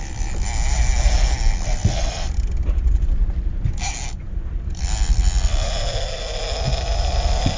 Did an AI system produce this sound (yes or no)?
no